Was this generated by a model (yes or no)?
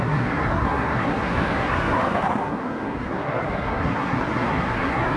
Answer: yes